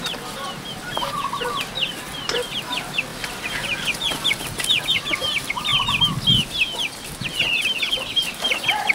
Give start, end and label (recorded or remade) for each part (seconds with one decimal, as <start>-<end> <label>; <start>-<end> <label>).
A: 0.0-3.1 remade; 3.1-4.7 recorded; 4.7-5.7 remade; 5.7-7.5 recorded; 7.5-8.9 remade